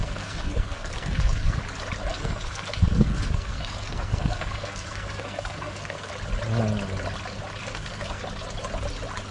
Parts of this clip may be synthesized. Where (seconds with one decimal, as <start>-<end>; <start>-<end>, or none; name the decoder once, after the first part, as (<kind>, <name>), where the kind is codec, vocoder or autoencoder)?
0.0-1.6 (codec, SNAC); 2.1-6.1; 7.6-8.2